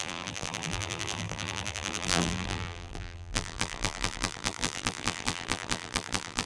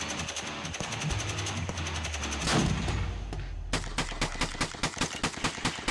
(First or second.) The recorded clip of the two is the second